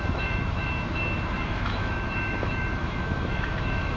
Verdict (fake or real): fake